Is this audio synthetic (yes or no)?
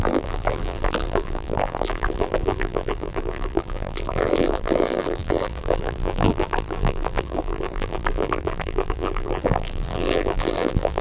yes